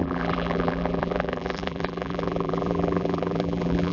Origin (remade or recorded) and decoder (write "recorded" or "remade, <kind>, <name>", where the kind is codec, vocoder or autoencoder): remade, vocoder, BigVGAN v2